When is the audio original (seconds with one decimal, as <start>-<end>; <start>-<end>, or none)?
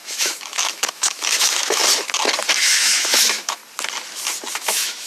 1.8-2.6; 3.6-4.5